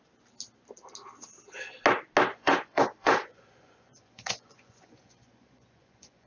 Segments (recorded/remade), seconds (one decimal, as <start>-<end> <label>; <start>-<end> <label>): 0.0-2.3 recorded; 2.3-6.3 remade